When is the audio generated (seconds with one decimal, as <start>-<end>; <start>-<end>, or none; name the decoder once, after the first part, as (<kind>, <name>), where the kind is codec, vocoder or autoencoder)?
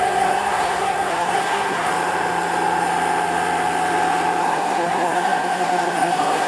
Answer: 0.0-1.9 (codec, SNAC); 4.4-6.5